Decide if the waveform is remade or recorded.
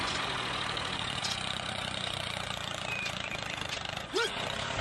remade